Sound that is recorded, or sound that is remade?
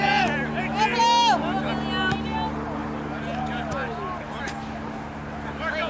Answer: recorded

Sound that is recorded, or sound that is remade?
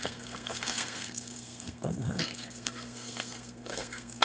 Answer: remade